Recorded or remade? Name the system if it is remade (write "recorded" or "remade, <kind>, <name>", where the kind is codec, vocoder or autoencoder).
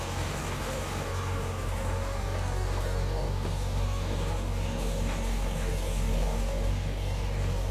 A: remade, codec, DAC